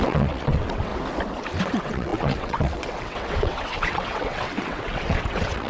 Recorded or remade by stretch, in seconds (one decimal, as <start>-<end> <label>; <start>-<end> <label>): 0.0-0.9 remade; 0.9-1.6 recorded; 1.6-5.7 remade